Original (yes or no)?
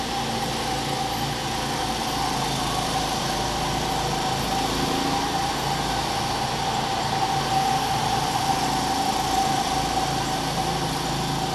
yes